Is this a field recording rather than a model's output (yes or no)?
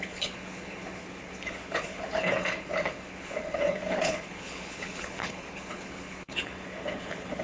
no